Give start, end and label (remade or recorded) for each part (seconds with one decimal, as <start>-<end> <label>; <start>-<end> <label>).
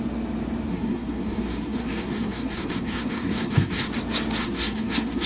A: 0.0-0.7 recorded; 0.7-3.9 remade; 3.9-4.4 recorded; 4.4-5.3 remade